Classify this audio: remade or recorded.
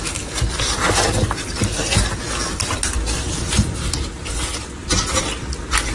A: recorded